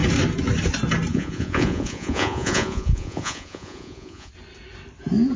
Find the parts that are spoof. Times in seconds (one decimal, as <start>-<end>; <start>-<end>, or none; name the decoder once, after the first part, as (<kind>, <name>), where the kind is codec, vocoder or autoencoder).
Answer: 1.1-4.3 (vocoder, Vocos)